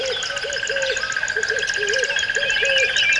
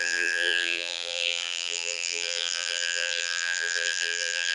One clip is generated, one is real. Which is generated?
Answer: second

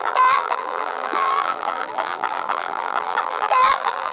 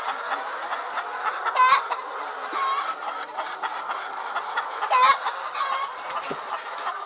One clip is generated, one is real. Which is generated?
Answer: first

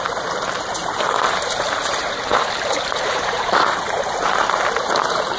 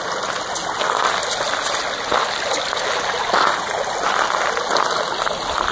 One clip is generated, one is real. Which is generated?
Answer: first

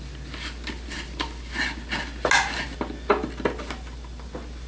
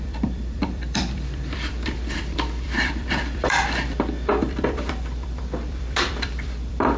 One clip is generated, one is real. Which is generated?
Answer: second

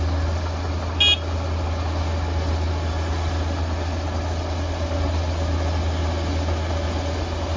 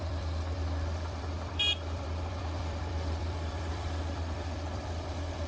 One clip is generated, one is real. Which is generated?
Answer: second